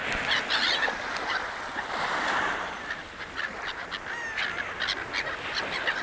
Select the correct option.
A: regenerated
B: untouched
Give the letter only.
B